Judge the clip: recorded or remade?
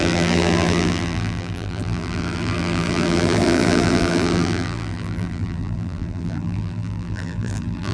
remade